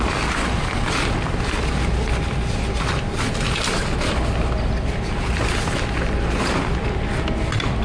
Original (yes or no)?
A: yes